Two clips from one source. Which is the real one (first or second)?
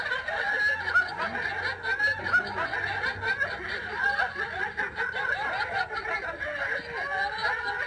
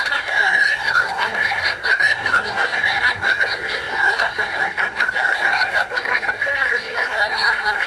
first